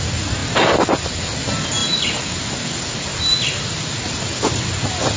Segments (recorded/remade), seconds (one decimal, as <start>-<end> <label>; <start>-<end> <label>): 0.0-5.2 recorded